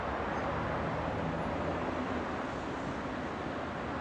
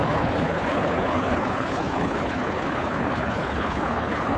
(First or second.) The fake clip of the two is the second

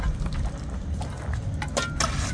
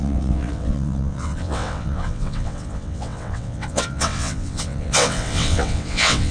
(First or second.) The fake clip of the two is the second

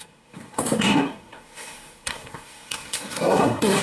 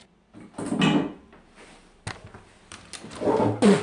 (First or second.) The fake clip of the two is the first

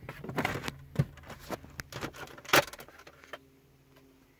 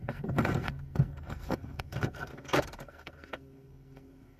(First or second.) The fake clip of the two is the second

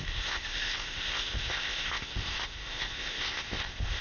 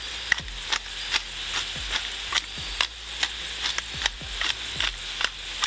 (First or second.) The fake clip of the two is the first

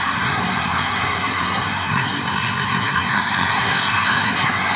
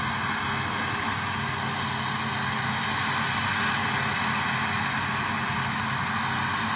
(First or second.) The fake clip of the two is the first